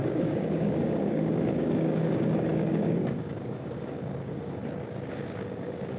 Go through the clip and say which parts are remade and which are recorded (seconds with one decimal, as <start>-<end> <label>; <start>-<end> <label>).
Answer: 0.0-4.6 remade; 4.6-5.1 recorded; 5.1-6.0 remade